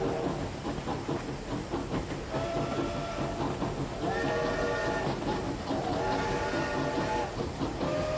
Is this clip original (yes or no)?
yes